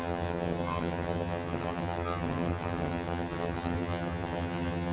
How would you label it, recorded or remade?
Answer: remade